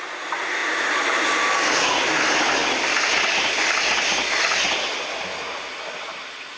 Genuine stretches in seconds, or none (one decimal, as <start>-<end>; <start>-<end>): 0.0-6.6